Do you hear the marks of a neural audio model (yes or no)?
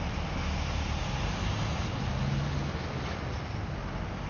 no